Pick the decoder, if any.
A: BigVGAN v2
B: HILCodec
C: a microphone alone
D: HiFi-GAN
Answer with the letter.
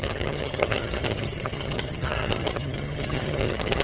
D